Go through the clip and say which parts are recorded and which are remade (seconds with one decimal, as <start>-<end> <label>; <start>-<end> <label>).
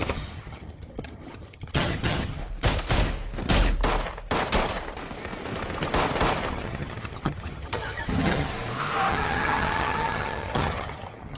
0.0-2.4 remade; 2.4-6.5 recorded; 6.5-8.5 remade; 8.5-9.1 recorded; 9.1-11.4 remade